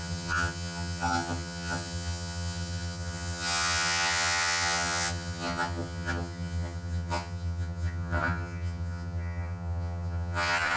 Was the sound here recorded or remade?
remade